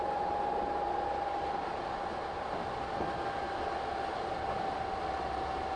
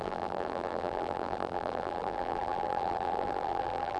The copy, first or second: second